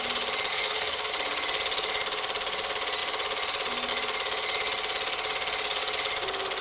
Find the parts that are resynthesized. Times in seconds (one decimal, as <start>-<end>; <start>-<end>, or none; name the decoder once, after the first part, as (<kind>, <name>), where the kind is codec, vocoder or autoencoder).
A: 0.5-1.1 (codec, SNAC)